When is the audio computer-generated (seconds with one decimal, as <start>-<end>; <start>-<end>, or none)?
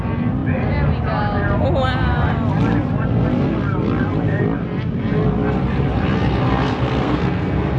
6.7-7.8